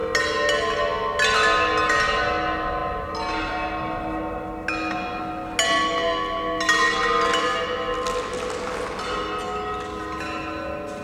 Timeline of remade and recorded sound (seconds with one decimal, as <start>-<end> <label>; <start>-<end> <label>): 0.0-11.0 recorded